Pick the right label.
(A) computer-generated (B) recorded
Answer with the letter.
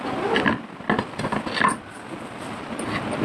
B